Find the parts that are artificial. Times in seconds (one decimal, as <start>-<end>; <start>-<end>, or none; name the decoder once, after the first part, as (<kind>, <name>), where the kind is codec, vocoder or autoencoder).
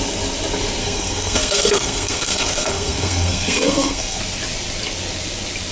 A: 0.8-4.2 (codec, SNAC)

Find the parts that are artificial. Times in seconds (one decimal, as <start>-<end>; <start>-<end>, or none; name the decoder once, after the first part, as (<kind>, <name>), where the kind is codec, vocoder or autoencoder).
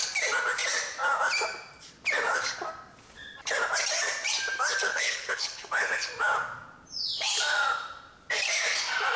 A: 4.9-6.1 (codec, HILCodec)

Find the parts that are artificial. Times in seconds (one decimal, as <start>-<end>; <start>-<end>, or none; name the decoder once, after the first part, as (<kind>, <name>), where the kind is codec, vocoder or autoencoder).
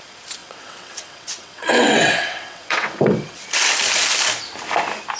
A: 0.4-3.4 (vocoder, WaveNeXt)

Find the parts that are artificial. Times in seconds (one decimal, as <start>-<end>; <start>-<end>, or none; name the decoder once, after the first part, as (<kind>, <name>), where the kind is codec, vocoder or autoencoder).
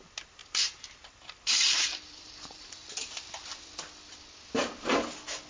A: 0.4-3.7 (vocoder, BigVGAN v2)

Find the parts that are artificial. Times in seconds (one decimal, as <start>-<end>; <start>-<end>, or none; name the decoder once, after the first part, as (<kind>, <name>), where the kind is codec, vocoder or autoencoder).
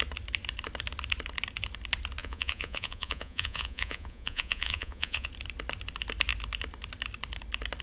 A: 2.2-5.3 (vocoder, Vocos)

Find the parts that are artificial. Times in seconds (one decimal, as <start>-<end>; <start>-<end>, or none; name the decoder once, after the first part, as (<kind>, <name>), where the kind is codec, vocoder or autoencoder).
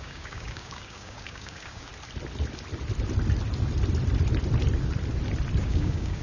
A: 0.0-1.9 (codec, DAC); 5.6-6.2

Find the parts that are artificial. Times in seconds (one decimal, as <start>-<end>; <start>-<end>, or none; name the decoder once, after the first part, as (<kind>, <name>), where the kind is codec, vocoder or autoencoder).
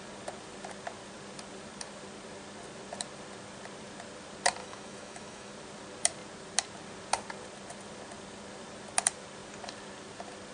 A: 4.6-5.5 (autoencoder, DAC-VAE)